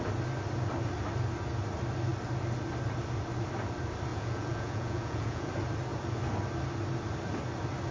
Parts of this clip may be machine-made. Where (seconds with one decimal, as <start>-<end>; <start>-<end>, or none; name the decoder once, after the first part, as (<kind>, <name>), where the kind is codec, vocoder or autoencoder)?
4.1-5.5 (vocoder, Vocos)